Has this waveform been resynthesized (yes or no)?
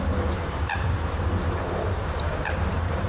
yes